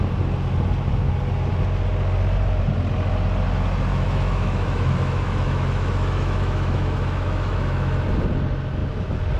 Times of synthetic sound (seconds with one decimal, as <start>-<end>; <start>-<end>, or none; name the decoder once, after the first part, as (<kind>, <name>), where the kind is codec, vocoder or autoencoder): 3.9-8.0 (autoencoder, DAC-VAE)